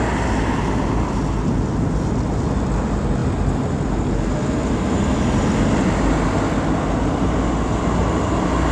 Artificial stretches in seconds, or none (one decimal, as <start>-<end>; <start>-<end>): none